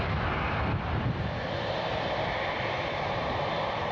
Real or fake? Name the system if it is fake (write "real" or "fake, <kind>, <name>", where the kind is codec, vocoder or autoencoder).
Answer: real